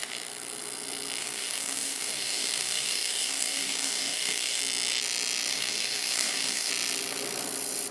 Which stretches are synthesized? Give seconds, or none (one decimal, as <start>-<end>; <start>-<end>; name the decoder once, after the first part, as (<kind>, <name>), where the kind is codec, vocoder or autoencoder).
1.2-4.6 (codec, DAC); 5.5-6.7